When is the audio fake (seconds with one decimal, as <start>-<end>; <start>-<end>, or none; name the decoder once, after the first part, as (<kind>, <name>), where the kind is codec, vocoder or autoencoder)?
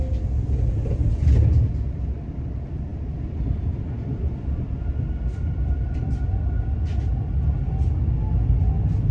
none